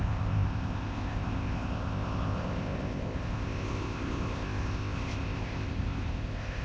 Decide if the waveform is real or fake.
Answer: fake